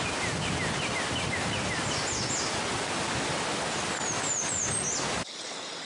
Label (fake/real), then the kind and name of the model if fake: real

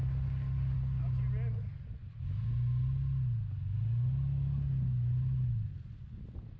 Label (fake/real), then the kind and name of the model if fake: real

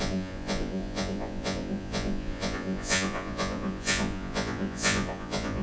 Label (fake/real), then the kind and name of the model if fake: fake, vocoder, Vocos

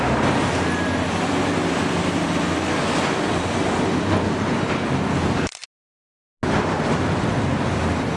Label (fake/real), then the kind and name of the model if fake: real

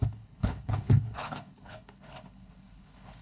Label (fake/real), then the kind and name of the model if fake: fake, codec, HILCodec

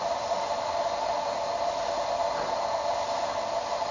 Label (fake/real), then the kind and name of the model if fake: real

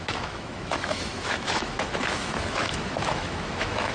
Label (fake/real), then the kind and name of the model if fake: fake, autoencoder, DAC-VAE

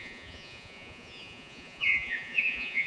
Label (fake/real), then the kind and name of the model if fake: fake, vocoder, Vocos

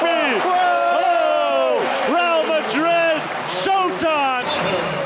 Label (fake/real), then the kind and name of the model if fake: real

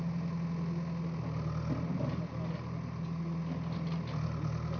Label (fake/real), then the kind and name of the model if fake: real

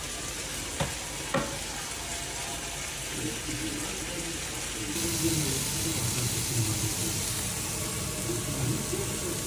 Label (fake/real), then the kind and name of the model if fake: real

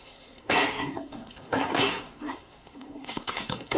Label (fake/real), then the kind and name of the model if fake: fake, codec, SNAC